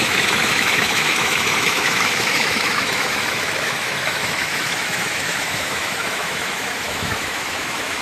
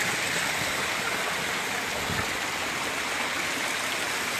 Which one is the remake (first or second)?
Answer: first